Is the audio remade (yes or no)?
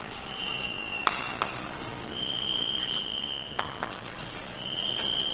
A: yes